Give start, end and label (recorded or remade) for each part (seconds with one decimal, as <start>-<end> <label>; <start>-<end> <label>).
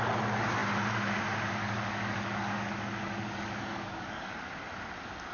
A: 0.0-1.6 recorded; 1.6-4.4 remade; 4.4-5.3 recorded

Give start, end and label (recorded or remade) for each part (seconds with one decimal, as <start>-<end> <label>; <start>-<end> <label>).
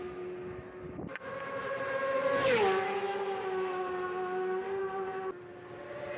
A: 0.0-6.2 recorded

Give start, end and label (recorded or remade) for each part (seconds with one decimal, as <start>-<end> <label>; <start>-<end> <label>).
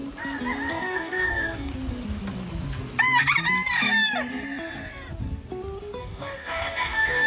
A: 0.0-0.7 recorded; 0.7-1.7 remade; 1.7-6.0 recorded; 6.0-7.3 remade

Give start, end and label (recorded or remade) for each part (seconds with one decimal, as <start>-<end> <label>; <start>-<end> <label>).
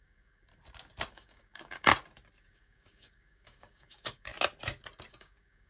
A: 0.0-0.5 remade; 0.5-1.1 recorded; 1.1-1.9 remade; 1.9-2.4 recorded; 2.4-4.3 remade; 4.3-5.1 recorded; 5.1-5.7 remade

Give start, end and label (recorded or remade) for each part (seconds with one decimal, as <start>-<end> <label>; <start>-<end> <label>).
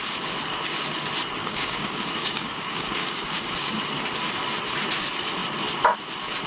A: 0.0-1.4 recorded; 1.4-3.8 remade; 3.8-6.5 recorded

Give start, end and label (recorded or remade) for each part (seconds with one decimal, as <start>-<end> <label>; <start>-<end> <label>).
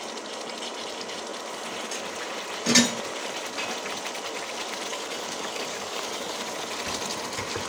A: 0.0-4.9 recorded; 4.9-6.4 remade; 6.4-7.7 recorded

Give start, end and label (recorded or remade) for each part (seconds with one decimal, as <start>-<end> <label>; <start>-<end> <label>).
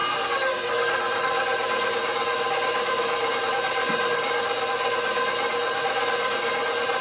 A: 0.0-7.0 recorded